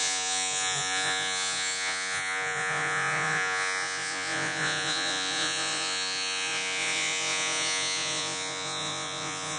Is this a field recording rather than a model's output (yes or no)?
no